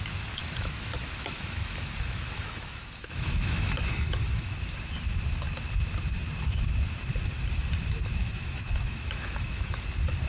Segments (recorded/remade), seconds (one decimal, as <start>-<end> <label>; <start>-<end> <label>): 0.0-0.4 recorded; 0.4-4.5 remade; 4.5-8.2 recorded; 8.2-9.8 remade; 9.8-10.3 recorded